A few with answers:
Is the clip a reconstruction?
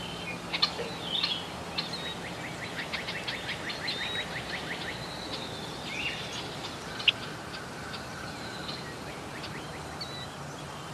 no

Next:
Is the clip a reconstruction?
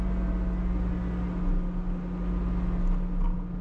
no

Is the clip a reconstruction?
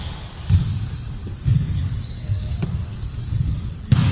yes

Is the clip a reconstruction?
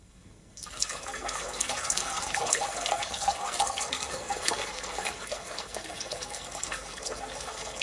yes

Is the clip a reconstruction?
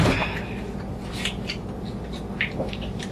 no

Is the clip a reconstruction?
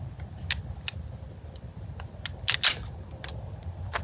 no